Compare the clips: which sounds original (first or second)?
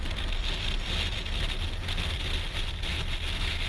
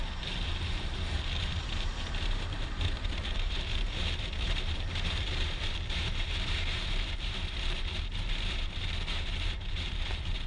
first